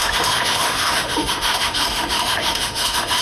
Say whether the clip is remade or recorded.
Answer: remade